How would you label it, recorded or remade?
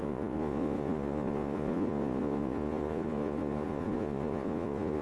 remade